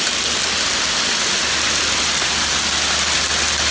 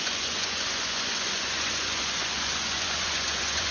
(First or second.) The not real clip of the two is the second